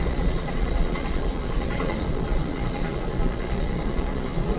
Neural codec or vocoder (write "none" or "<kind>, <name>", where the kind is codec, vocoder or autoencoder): vocoder, Vocos